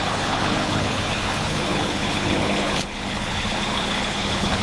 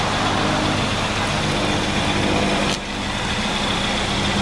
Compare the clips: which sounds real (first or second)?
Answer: second